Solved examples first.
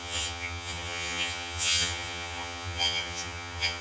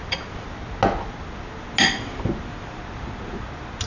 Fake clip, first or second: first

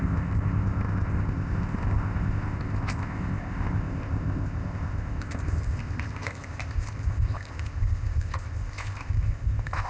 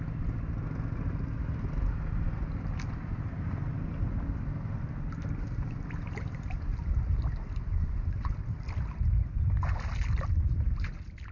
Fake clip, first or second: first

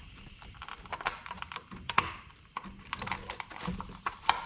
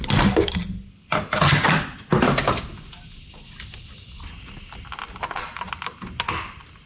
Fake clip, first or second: first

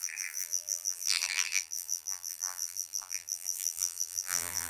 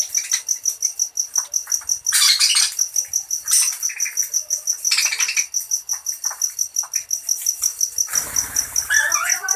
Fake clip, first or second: first